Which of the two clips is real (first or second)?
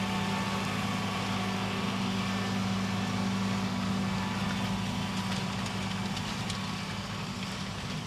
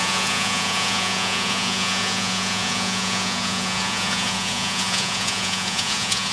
first